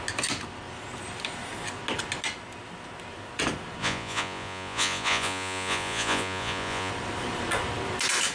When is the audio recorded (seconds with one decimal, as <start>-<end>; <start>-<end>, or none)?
0.0-3.8; 6.9-8.3